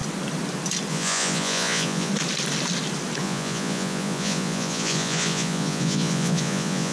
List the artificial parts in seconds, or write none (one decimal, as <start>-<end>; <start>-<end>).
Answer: 0.9-2.1; 3.2-6.9